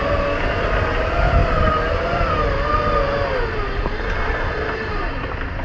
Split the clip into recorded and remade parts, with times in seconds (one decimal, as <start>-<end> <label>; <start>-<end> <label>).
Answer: 0.0-5.6 recorded